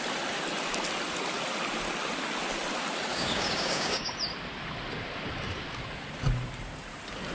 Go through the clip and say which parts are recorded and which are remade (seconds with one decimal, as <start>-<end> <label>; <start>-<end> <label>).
0.0-3.1 recorded; 3.1-4.1 remade; 4.1-7.3 recorded